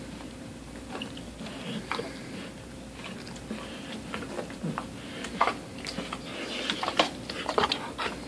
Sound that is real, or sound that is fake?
real